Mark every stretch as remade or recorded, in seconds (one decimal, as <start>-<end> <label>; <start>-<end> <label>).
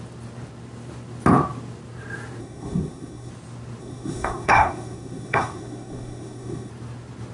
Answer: 0.0-2.4 recorded; 2.4-3.3 remade; 3.3-3.8 recorded; 3.8-6.7 remade; 6.7-7.3 recorded